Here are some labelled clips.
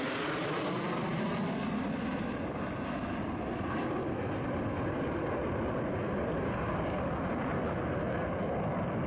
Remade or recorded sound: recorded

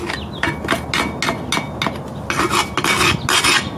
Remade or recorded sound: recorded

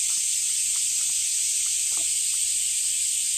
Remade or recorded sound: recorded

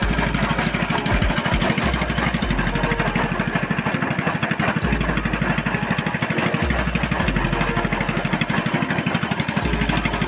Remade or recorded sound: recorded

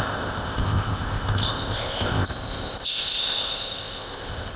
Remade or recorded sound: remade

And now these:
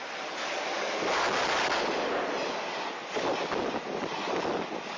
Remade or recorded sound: recorded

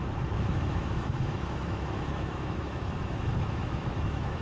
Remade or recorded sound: remade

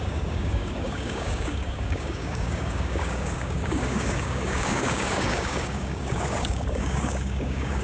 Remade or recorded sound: remade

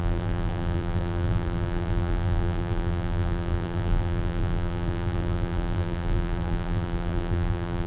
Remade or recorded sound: remade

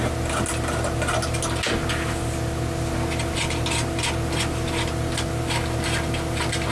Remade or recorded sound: recorded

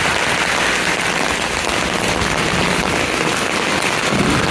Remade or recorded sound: recorded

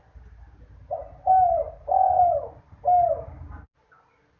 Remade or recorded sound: recorded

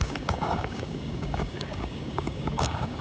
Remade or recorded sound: remade